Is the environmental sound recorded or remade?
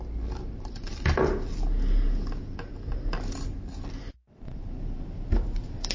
recorded